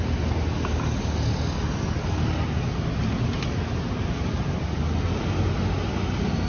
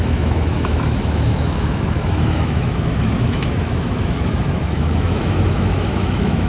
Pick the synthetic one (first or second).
second